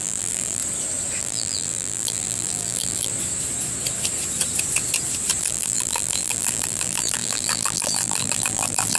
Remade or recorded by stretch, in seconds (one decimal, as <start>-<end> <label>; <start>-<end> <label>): 0.0-0.6 remade; 0.6-1.2 recorded; 1.2-3.1 remade; 3.1-5.4 recorded; 5.4-9.0 remade